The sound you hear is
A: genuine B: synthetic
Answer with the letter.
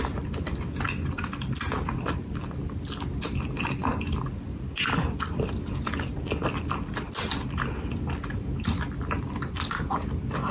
A